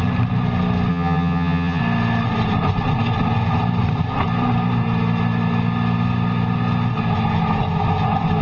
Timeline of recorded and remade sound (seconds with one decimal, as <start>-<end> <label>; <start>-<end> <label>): 0.0-0.9 recorded; 0.9-1.8 remade; 1.8-8.4 recorded